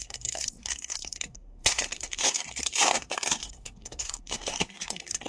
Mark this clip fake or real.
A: fake